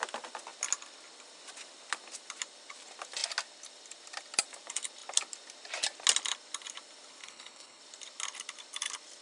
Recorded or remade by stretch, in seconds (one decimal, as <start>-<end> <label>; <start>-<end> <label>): 0.0-7.2 recorded; 7.2-7.8 remade; 7.8-9.2 recorded